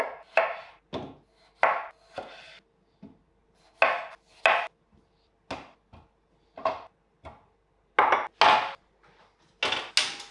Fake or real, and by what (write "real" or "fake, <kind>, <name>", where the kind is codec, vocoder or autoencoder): real